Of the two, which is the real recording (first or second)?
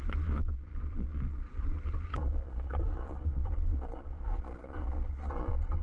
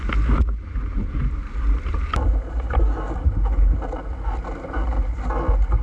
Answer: second